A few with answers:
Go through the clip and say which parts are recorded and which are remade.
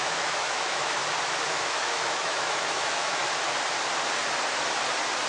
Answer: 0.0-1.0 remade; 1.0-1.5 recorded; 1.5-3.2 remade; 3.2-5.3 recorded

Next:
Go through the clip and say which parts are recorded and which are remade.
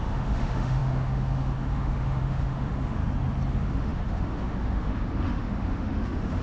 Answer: 0.0-3.0 remade; 3.0-3.5 recorded; 3.5-6.4 remade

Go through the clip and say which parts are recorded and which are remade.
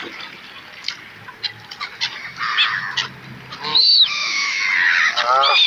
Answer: 0.0-3.7 recorded; 3.7-4.6 remade; 4.6-5.7 recorded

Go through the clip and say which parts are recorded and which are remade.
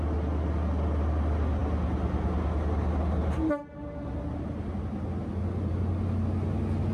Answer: 0.0-6.9 recorded